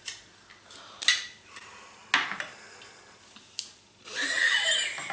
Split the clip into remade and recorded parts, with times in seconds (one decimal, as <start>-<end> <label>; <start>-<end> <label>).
0.0-5.1 recorded